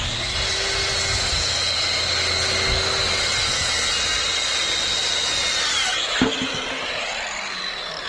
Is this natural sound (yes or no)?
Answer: yes